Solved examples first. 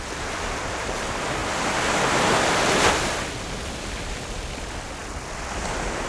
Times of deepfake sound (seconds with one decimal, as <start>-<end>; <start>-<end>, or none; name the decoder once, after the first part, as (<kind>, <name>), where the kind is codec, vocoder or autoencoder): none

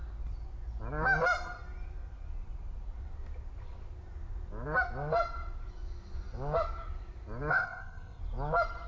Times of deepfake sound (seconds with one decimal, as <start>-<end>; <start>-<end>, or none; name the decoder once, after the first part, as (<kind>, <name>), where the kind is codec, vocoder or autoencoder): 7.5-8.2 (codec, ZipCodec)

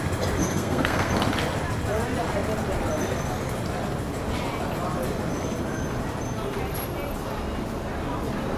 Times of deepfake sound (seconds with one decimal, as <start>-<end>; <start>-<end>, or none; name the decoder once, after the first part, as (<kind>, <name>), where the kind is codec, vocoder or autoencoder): 0.4-1.1 (codec, SNAC)

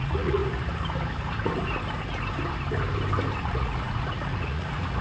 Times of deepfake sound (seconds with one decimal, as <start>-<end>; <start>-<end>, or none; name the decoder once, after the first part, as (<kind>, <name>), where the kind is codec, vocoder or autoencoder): 0.0-0.4 (vocoder, Vocos); 3.4-5.0

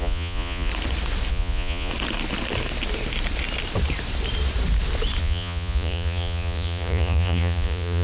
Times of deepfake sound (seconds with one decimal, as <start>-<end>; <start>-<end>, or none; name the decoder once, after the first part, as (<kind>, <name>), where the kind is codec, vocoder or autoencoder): 0.0-0.7 (vocoder, Vocos); 1.3-1.9; 5.2-8.0

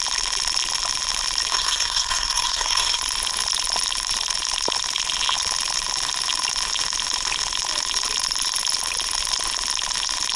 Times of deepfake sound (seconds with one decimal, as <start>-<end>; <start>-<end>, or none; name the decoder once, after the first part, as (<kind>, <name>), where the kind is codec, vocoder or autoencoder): 1.5-3.0 (codec, SNAC)

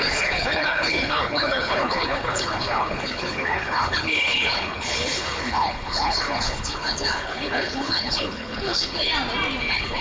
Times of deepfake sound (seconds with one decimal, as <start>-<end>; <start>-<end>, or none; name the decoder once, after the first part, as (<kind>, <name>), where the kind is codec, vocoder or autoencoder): 0.0-9.1 (codec, HILCodec); 9.6-10.0